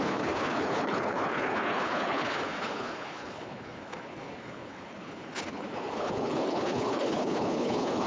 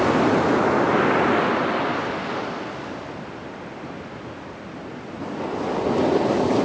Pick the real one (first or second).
second